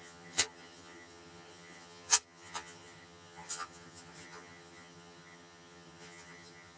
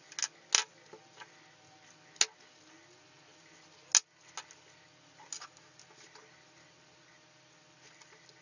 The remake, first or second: first